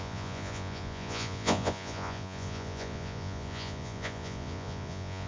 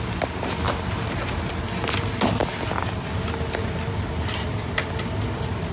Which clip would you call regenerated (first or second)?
first